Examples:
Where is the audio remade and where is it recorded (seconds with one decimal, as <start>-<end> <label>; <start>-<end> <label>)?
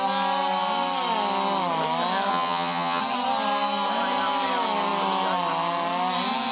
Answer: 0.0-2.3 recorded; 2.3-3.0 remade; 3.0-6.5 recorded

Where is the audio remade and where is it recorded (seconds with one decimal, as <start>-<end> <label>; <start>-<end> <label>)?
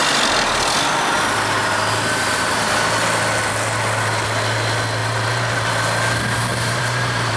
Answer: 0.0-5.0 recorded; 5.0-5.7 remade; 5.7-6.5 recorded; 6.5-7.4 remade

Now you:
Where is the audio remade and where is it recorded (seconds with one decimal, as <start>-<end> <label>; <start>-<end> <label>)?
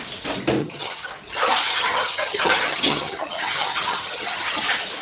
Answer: 0.0-0.6 recorded; 0.6-1.1 remade; 1.1-1.7 recorded; 1.7-4.6 remade; 4.6-5.0 recorded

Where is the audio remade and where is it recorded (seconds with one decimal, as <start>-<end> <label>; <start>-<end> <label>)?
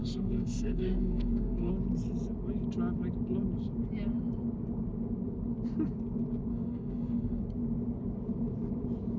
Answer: 0.0-1.7 remade; 1.7-6.5 recorded; 6.5-7.4 remade; 7.4-9.2 recorded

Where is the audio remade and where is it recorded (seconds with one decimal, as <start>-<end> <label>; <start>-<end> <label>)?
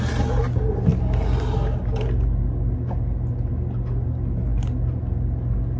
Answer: 0.0-5.8 recorded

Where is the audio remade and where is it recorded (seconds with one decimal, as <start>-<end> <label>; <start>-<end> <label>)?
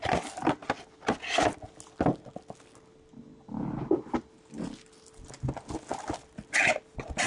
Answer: 0.0-7.3 recorded